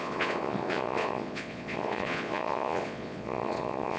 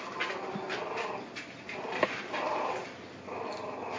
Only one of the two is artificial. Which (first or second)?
first